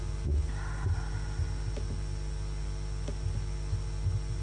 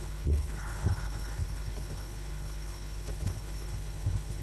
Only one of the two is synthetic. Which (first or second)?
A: second